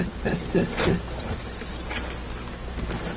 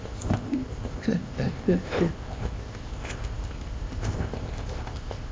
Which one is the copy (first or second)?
second